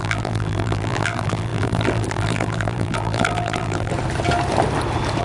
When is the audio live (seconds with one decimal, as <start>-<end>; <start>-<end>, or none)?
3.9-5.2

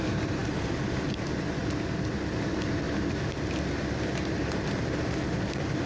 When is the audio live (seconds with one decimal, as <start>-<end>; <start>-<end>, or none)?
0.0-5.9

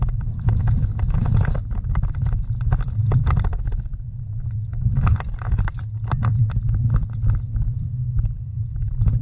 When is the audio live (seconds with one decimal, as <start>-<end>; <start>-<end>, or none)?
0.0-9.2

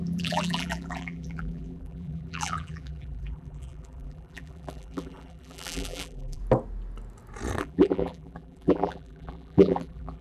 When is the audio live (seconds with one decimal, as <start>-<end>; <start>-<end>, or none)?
6.4-7.6